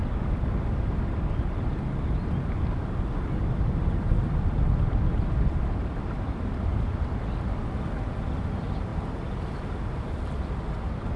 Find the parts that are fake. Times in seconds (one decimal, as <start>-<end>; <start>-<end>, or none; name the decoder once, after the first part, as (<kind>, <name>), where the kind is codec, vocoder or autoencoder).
none